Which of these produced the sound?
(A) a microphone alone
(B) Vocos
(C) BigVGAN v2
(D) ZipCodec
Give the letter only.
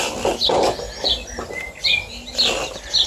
A